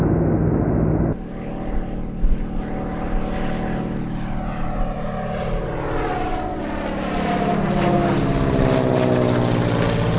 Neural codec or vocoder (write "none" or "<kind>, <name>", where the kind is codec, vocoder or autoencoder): none